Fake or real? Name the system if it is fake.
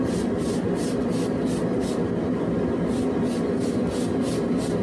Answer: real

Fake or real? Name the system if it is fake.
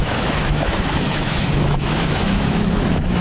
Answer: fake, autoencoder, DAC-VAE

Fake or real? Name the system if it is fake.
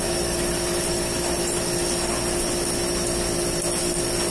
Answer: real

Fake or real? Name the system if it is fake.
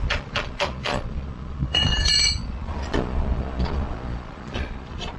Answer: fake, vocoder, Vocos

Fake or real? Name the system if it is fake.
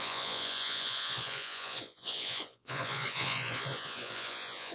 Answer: fake, vocoder, Vocos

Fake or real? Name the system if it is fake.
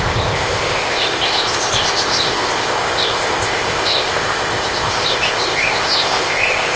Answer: fake, codec, ZipCodec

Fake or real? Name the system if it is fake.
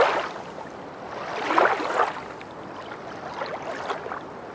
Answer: real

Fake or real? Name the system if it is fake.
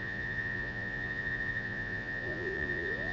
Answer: fake, vocoder, Vocos